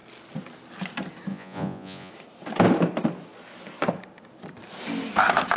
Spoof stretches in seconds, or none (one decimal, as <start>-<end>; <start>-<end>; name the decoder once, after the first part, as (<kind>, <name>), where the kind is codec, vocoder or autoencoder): 1.3-2.1 (vocoder, Vocos)